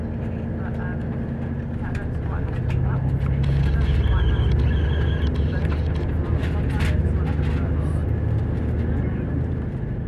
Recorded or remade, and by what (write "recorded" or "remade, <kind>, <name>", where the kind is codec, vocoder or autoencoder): recorded